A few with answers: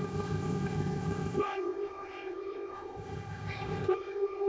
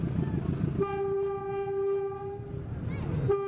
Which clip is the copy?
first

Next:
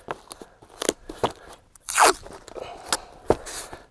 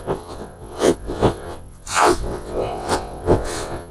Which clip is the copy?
second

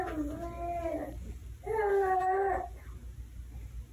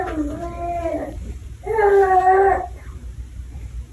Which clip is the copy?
second